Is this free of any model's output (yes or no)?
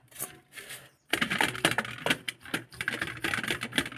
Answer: yes